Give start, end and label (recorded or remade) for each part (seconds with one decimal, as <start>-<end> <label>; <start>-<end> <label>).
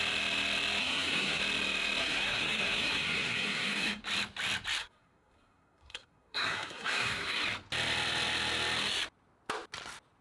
0.0-0.8 recorded; 0.8-1.4 remade; 1.4-2.0 recorded; 2.0-4.0 remade; 4.0-4.8 recorded; 4.8-7.4 remade; 7.4-10.2 recorded